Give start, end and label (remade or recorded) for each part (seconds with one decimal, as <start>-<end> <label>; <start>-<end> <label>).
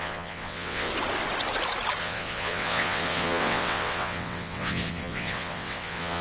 0.0-0.9 remade; 0.9-2.0 recorded; 2.0-6.2 remade